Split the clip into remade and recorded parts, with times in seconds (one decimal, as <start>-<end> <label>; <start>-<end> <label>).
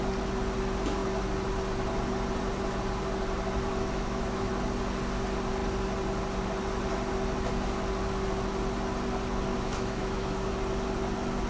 0.0-3.7 recorded; 3.7-4.5 remade; 4.5-9.5 recorded; 9.5-10.5 remade; 10.5-11.5 recorded